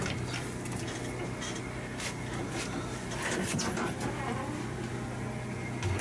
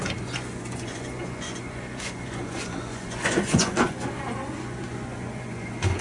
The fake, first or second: second